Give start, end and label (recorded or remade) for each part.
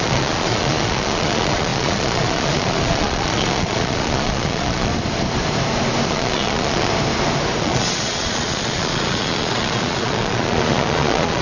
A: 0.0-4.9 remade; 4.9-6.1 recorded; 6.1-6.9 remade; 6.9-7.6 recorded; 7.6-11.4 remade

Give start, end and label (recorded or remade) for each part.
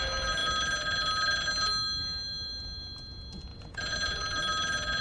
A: 0.0-3.5 recorded; 3.5-4.4 remade; 4.4-5.0 recorded